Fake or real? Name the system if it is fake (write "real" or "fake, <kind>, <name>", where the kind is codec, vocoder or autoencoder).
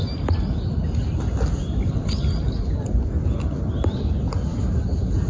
real